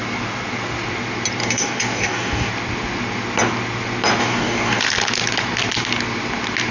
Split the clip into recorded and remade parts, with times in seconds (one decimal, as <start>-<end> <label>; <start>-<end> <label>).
0.0-1.4 recorded; 1.4-2.5 remade; 2.5-4.2 recorded; 4.2-4.8 remade; 4.8-6.7 recorded